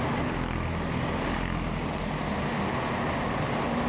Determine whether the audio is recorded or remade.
recorded